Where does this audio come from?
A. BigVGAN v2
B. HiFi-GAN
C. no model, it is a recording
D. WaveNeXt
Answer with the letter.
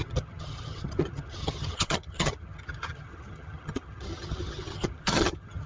B